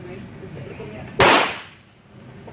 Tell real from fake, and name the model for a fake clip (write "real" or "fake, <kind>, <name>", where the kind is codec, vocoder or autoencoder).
real